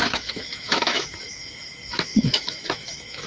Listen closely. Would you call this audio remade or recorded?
remade